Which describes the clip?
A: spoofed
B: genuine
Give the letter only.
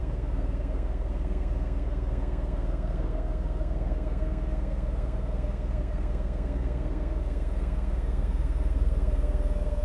A